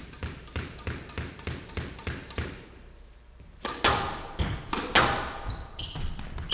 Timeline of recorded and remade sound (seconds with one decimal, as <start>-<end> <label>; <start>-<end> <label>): 0.0-2.2 recorded; 2.2-3.8 remade; 3.8-6.5 recorded